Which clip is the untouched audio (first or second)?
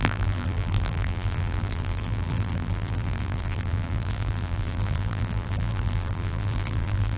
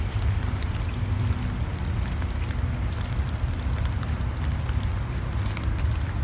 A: second